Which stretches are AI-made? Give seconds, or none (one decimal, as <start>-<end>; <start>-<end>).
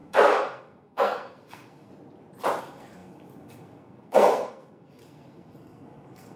0.0-1.9; 2.6-6.4